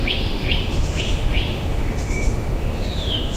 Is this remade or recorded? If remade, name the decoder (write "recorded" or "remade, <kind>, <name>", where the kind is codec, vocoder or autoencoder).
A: remade, autoencoder, DAC-VAE